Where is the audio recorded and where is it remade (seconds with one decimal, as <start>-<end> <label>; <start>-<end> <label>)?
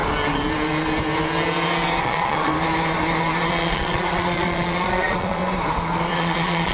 0.0-2.0 recorded; 2.0-2.5 remade; 2.5-3.5 recorded; 3.5-5.4 remade; 5.4-6.1 recorded; 6.1-6.7 remade